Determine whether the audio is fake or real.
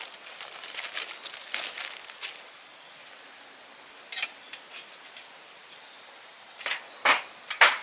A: real